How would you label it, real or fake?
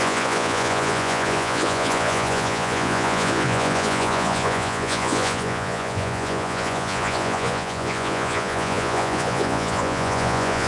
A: fake